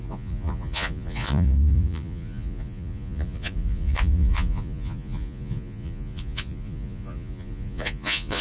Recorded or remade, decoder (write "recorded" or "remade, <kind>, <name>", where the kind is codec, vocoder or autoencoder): remade, vocoder, Vocos